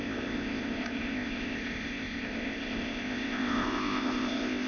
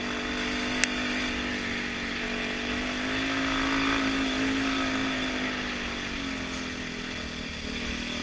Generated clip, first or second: first